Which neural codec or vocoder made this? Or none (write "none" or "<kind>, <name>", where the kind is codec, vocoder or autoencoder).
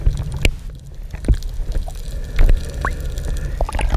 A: none